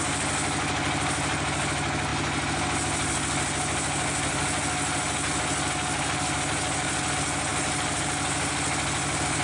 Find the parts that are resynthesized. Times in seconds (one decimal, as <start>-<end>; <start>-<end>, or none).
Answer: none